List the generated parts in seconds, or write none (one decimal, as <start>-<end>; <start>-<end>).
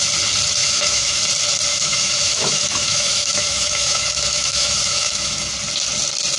0.6-1.2; 1.7-5.5